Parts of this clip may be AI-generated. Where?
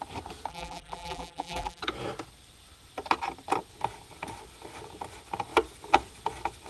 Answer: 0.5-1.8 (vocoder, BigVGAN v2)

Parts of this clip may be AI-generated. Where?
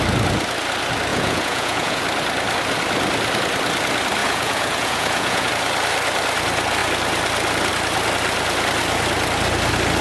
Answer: 1.1-2.0 (vocoder, Vocos); 4.2-5.5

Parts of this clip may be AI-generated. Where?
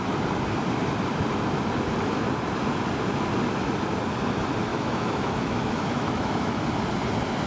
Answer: 4.7-6.6 (autoencoder, DAC-VAE)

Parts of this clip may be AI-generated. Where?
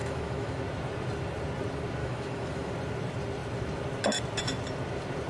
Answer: 0.0-0.6 (autoencoder, DAC-VAE); 2.0-2.7